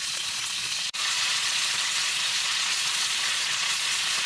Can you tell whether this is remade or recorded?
remade